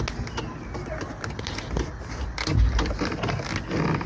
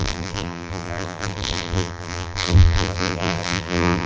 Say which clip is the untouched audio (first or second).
first